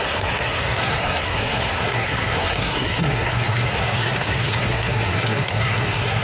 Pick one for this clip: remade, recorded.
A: remade